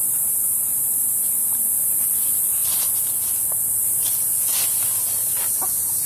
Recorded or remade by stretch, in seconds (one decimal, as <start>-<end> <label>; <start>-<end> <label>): 0.0-6.1 recorded